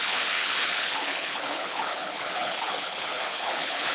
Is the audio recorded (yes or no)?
no